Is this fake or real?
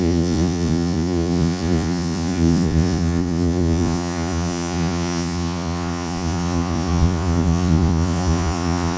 fake